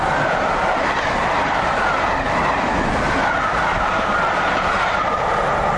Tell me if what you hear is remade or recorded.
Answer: recorded